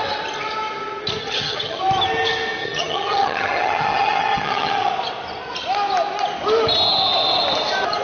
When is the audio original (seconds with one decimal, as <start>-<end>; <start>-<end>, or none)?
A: 0.0-1.2; 1.8-2.6; 4.9-8.0

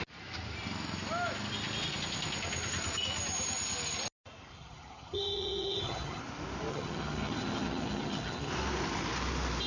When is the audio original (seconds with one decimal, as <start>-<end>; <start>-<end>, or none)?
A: 0.0-4.5; 6.2-6.7; 8.5-9.7

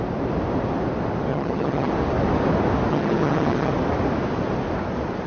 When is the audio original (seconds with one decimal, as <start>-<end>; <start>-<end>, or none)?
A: 0.0-1.3; 1.9-2.9; 3.7-5.3

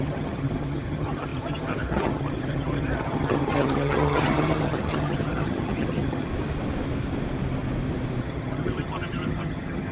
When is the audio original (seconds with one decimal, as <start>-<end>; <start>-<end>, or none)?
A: 6.3-8.2

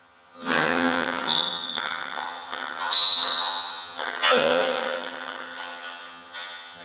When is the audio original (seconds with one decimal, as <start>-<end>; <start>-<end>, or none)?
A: none

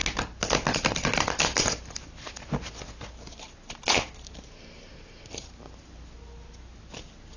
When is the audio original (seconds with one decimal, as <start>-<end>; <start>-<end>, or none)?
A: 0.0-7.4

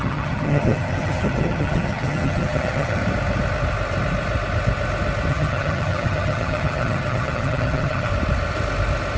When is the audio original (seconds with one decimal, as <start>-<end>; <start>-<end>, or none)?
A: 3.0-5.3; 8.1-9.2